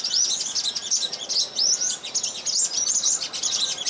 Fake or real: real